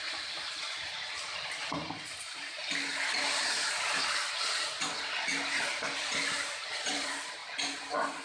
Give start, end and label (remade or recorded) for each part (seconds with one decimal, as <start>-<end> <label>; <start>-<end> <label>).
0.0-2.6 remade; 2.6-5.8 recorded; 5.8-7.4 remade; 7.4-8.2 recorded